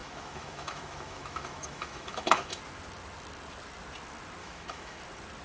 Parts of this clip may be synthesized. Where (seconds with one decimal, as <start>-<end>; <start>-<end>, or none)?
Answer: 0.0-2.6; 4.4-5.0